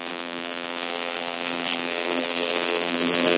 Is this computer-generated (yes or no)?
yes